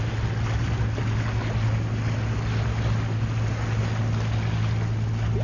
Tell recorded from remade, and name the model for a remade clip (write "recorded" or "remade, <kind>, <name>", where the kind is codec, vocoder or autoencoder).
recorded